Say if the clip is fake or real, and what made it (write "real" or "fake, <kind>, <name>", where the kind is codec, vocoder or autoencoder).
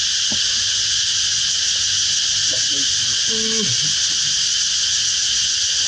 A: real